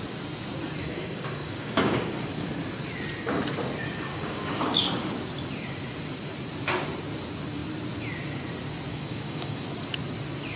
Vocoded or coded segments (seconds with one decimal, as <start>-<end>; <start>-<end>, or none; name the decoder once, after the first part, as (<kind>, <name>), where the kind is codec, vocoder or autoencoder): 0.8-2.3 (codec, DAC); 4.1-4.8; 8.9-9.6